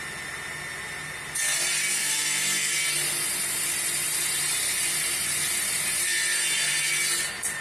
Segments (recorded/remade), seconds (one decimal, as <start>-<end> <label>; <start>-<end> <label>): 0.0-2.0 recorded; 2.0-2.7 remade; 2.7-7.6 recorded